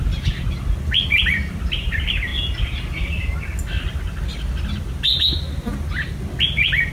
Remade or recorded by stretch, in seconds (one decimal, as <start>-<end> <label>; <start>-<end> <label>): 0.0-6.9 recorded